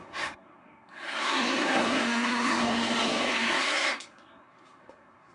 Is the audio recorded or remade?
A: remade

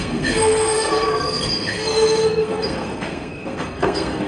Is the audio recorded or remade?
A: remade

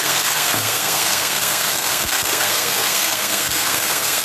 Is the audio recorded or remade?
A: remade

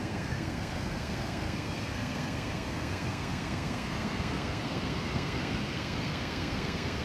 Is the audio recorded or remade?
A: remade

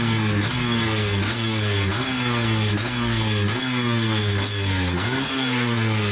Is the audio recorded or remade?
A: remade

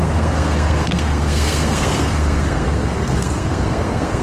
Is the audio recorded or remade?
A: remade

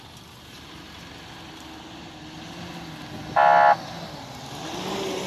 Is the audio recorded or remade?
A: recorded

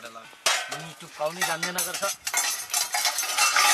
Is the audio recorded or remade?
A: recorded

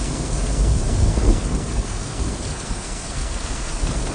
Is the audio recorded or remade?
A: remade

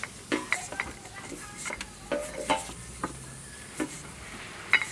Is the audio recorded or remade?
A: recorded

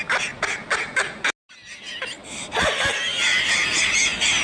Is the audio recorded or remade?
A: recorded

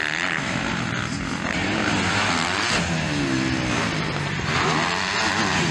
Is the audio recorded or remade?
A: recorded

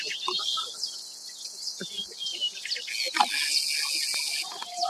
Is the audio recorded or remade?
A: recorded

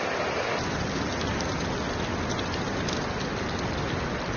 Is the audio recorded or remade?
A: recorded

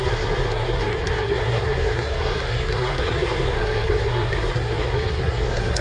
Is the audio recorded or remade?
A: remade